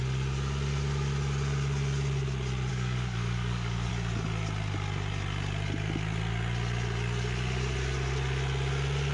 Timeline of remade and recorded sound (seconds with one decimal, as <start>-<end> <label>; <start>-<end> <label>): 0.0-2.7 recorded; 2.7-3.9 remade; 3.9-9.1 recorded